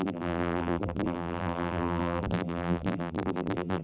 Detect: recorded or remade remade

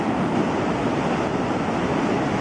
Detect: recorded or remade recorded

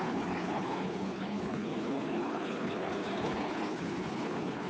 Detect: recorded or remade remade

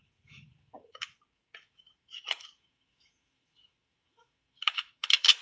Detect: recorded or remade remade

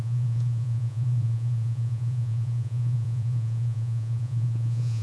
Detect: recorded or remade remade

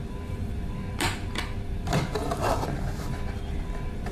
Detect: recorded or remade remade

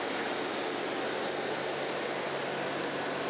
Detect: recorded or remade recorded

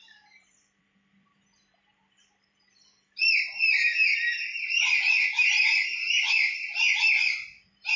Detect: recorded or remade remade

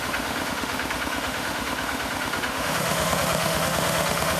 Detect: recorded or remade remade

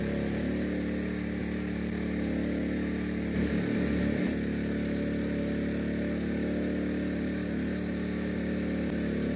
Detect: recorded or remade recorded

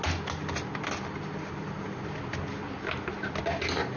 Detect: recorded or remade recorded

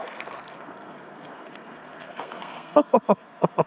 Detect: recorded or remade remade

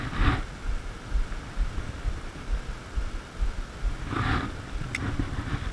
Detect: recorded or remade recorded